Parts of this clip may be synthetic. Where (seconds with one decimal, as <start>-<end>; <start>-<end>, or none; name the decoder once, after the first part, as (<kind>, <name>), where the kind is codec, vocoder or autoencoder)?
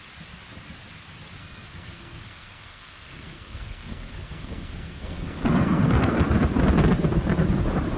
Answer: 1.4-6.2 (codec, SNAC)